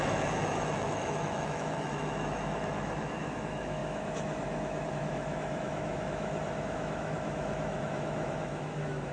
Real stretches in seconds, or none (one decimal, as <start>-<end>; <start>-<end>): none